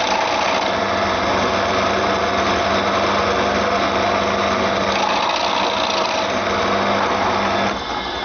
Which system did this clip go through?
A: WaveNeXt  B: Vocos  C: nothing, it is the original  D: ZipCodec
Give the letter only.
C